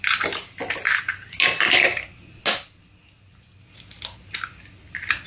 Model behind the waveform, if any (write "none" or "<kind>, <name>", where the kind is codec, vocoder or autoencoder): none